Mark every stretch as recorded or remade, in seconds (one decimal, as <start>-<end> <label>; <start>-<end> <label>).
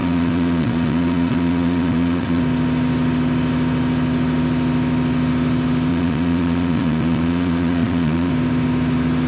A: 0.0-2.4 remade; 2.4-5.9 recorded; 5.9-8.3 remade; 8.3-9.3 recorded